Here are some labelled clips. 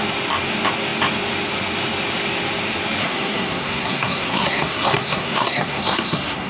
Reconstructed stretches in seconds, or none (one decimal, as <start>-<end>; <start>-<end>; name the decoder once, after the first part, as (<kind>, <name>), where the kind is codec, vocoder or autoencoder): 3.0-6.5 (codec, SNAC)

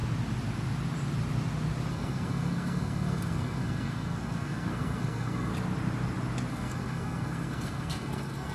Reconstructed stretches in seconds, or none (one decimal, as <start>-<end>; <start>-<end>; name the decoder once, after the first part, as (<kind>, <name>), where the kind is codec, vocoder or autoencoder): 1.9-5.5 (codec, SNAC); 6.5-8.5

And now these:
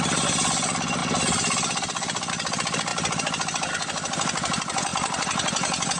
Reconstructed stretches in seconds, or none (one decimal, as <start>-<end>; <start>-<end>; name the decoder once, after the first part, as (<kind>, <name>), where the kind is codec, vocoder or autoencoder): none

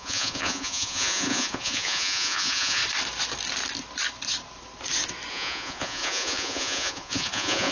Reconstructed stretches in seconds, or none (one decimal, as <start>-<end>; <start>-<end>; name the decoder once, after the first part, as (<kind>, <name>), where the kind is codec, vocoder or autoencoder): 0.0-2.8 (vocoder, Vocos); 5.3-7.7